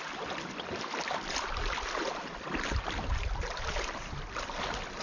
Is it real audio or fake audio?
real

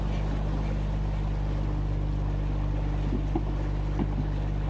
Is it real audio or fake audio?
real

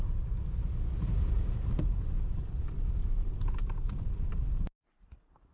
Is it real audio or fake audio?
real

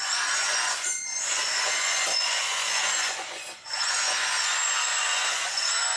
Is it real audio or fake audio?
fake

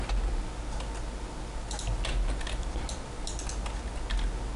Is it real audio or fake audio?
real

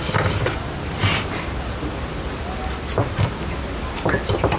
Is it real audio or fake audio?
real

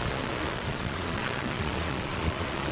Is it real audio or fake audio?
fake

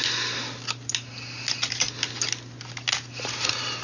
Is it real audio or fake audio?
real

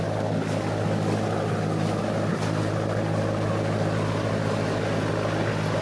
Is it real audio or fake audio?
real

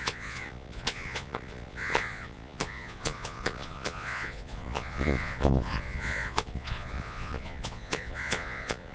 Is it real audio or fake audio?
fake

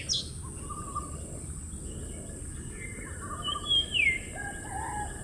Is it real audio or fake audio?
real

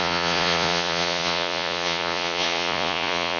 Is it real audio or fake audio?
fake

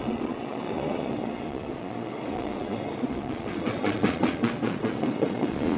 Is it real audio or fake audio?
fake